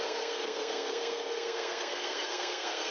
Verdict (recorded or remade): remade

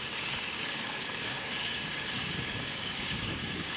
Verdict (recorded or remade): remade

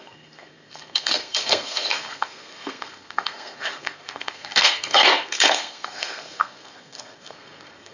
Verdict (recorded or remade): remade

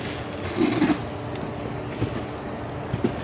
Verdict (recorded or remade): recorded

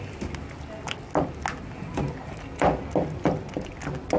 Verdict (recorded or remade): recorded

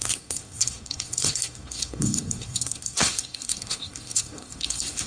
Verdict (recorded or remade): remade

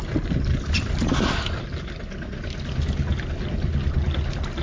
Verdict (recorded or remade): recorded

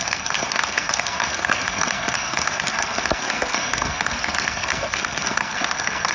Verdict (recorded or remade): remade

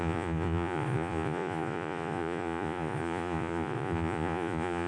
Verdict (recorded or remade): remade